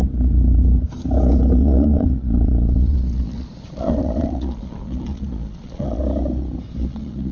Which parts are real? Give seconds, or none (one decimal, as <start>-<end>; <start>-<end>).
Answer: 0.0-1.6; 6.0-6.8